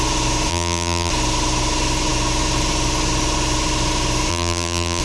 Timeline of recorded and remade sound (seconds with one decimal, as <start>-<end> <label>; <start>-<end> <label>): 0.0-0.5 recorded; 0.5-1.1 remade; 1.1-4.3 recorded; 4.3-5.0 remade